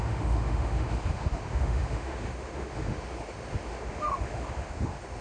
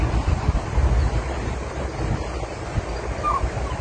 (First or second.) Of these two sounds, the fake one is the first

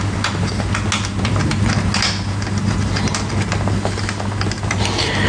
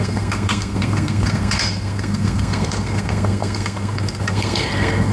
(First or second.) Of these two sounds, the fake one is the second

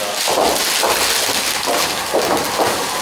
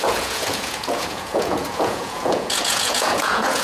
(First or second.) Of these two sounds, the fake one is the second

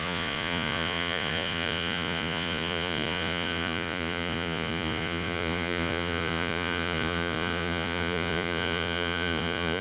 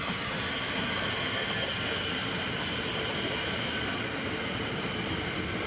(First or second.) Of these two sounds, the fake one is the first